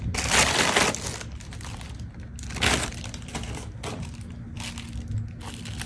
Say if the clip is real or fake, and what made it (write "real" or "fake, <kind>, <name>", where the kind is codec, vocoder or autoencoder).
real